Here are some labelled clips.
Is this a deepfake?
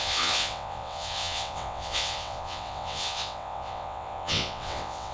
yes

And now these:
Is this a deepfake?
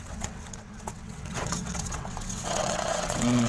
yes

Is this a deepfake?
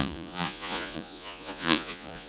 yes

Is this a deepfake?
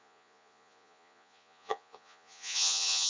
yes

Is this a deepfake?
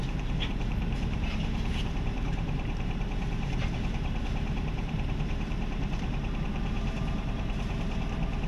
yes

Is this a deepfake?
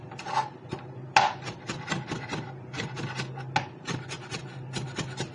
no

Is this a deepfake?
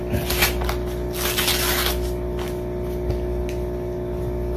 no